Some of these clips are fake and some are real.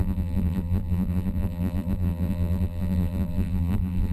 fake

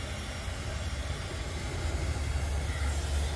real